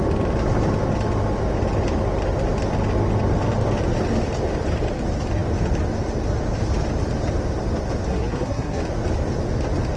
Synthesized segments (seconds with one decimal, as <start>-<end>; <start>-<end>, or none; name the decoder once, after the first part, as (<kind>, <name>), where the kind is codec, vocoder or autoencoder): 8.1-8.8 (codec, SNAC)